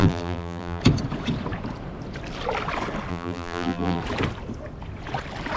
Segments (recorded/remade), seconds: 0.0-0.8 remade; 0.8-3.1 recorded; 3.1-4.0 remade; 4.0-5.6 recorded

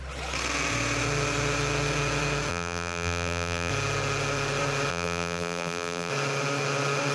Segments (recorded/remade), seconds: 0.0-2.5 recorded; 2.5-3.7 remade; 3.7-4.9 recorded; 4.9-6.1 remade; 6.1-7.1 recorded

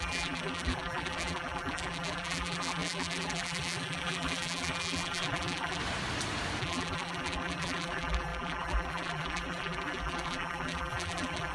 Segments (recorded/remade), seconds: 0.0-5.8 remade; 5.8-6.6 recorded; 6.6-11.5 remade